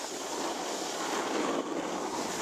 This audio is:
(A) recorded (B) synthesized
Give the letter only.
A